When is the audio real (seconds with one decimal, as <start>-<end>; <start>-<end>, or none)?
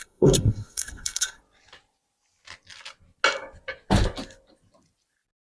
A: 1.4-5.5